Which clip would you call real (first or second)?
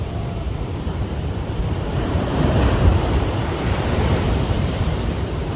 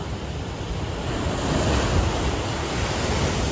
second